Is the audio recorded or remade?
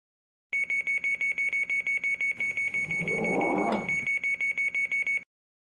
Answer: recorded